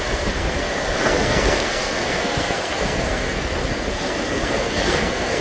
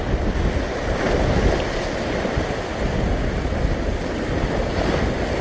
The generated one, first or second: first